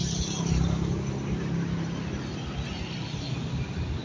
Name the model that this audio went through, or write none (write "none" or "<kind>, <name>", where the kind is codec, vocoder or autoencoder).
none